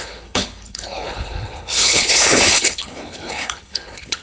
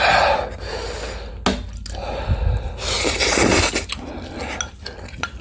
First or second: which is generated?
first